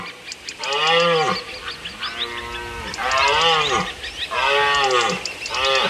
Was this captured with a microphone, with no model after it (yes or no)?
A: yes